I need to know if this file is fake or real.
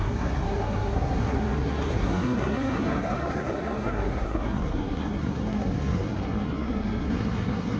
fake